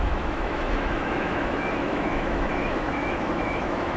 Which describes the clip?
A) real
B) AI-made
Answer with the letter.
B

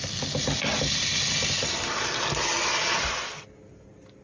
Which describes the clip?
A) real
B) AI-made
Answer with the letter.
A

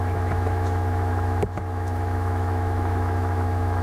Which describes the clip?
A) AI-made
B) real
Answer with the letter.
A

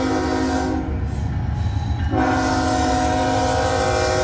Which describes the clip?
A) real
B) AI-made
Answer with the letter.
A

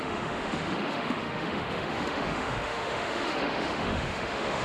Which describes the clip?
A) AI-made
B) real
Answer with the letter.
A